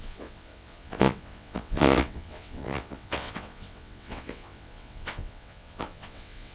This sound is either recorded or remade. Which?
remade